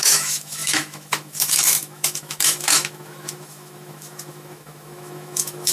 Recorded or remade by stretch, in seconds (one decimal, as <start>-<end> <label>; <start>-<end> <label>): 0.0-5.7 remade

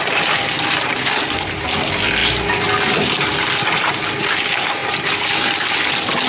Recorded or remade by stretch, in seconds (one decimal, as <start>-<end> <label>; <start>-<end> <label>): 0.0-6.3 recorded